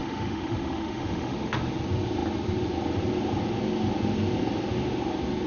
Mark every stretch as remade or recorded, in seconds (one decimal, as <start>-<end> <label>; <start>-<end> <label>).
0.0-1.6 remade; 1.6-5.5 recorded